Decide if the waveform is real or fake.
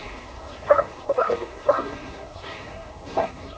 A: fake